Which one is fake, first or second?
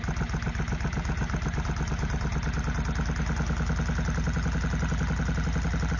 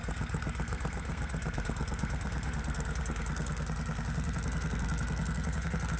second